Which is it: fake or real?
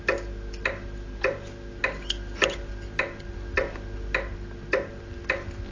real